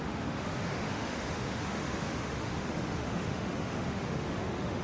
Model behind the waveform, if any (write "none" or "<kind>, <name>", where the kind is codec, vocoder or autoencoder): autoencoder, DAC-VAE